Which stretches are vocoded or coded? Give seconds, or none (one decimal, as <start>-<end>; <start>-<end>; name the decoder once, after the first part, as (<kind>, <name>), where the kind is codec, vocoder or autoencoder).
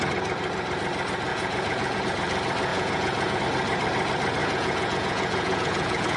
1.3-2.0 (vocoder, Vocos); 2.7-3.4; 4.4-6.2